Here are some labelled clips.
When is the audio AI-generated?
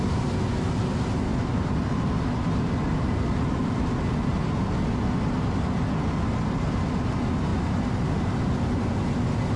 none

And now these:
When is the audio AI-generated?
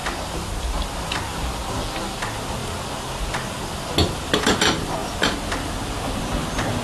none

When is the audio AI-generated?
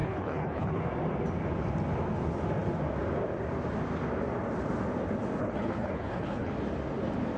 0.0-0.8 (codec, HILCodec); 5.4-6.5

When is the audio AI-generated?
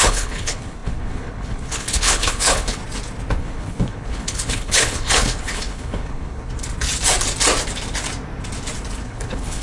0.0-2.8 (codec, HILCodec); 3.4-6.5; 9.0-9.6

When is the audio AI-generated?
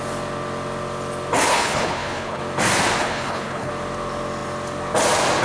1.5-2.4 (codec, HILCodec); 3.0-3.7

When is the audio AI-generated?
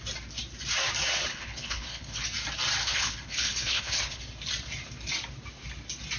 1.3-2.2 (codec, HILCodec); 2.8-4.2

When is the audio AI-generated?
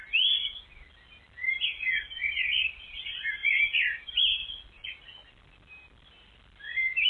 none